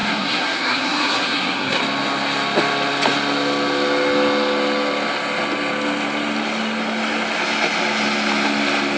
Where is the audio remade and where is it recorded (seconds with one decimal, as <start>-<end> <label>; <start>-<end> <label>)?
0.0-1.8 remade; 1.8-9.0 recorded